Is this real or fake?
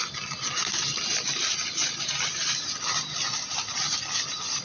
real